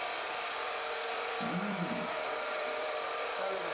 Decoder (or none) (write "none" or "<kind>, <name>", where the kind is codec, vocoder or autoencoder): vocoder, BigVGAN v2